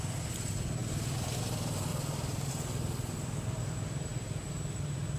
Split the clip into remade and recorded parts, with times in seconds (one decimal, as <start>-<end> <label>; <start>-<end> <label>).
0.0-0.8 recorded; 0.8-1.4 remade; 1.4-1.9 recorded; 1.9-2.5 remade; 2.5-5.2 recorded